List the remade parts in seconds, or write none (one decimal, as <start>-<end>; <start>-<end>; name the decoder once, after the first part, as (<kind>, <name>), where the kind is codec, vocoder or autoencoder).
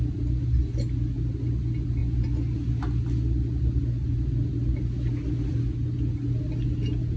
none